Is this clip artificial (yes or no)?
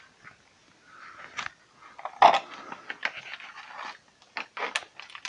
no